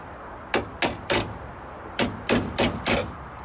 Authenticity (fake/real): real